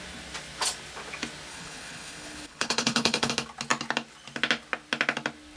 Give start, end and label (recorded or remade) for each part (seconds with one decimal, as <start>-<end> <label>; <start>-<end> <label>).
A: 0.0-1.5 recorded; 1.5-3.3 remade; 3.3-5.6 recorded